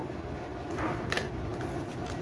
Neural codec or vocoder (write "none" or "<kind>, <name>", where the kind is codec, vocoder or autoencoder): none